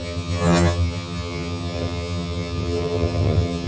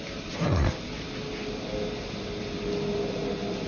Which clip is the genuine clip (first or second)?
second